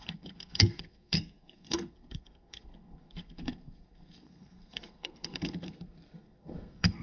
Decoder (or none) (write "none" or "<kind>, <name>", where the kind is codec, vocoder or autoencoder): codec, SNAC